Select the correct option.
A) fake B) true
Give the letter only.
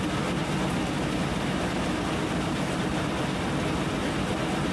B